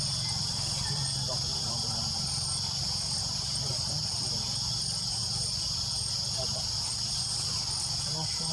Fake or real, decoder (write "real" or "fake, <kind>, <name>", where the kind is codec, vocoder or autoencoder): real